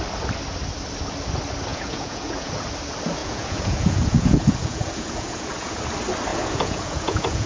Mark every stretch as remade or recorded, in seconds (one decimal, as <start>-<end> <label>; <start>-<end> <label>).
0.0-1.7 recorded; 1.7-2.5 remade; 2.5-3.2 recorded; 3.2-5.8 remade; 5.8-6.3 recorded; 6.3-7.5 remade